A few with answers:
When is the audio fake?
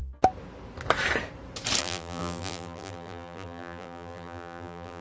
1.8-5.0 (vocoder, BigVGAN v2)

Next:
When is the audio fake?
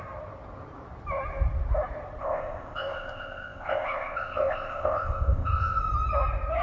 2.2-5.8 (codec, ZipCodec)